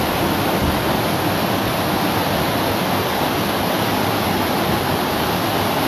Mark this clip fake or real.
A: real